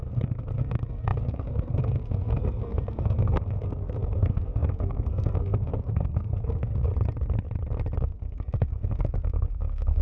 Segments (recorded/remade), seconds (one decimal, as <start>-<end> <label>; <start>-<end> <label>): 0.0-6.9 remade; 6.9-8.0 recorded; 8.0-10.0 remade

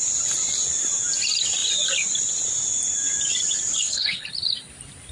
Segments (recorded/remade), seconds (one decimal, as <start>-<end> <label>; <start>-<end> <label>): 0.0-3.7 recorded; 3.7-4.3 remade; 4.3-5.1 recorded

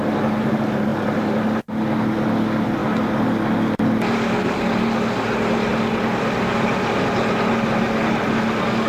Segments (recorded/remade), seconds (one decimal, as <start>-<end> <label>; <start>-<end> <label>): 0.0-8.9 recorded

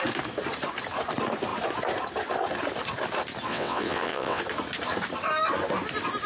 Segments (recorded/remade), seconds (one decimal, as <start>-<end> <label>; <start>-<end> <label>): 0.0-3.5 recorded; 3.5-4.4 remade; 4.4-6.3 recorded

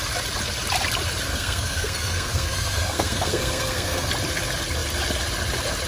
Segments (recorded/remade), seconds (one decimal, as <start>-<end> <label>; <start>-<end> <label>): 0.0-1.3 recorded; 1.3-4.1 remade; 4.1-5.9 recorded

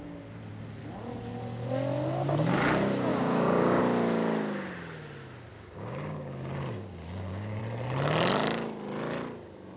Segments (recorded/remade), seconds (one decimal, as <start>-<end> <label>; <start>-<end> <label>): 0.0-3.1 recorded; 3.1-3.8 remade; 3.8-5.5 recorded; 5.5-7.6 remade; 7.6-9.8 recorded